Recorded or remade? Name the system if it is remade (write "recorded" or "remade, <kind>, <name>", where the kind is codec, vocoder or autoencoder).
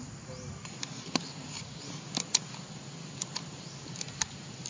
recorded